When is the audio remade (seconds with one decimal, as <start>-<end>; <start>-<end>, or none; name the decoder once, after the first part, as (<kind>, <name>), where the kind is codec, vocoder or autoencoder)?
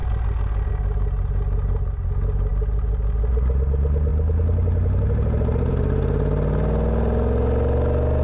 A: none